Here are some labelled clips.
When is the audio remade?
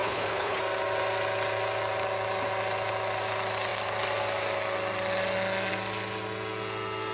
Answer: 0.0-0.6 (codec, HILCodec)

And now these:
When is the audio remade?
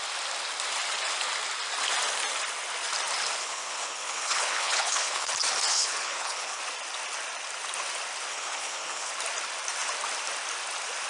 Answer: 3.4-5.3 (codec, HILCodec); 5.7-6.6; 8.3-9.1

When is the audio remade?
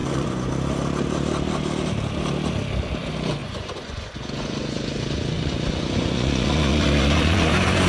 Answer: 0.0-0.5 (vocoder, Vocos); 3.4-7.9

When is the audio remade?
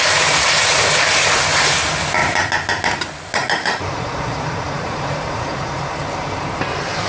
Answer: 3.4-5.9 (vocoder, Vocos)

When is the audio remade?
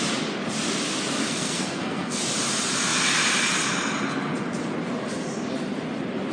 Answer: 1.2-2.2 (codec, SNAC)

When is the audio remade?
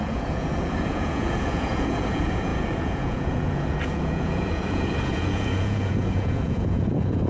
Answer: 0.0-7.3 (vocoder, Vocos)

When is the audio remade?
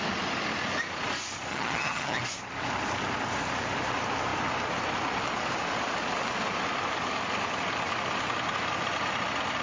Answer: 1.5-2.2 (vocoder, HiFi-GAN)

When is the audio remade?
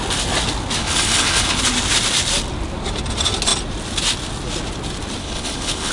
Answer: 0.8-1.6 (codec, HILCodec); 5.2-5.9